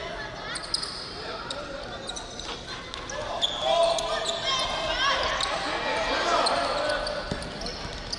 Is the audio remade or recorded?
recorded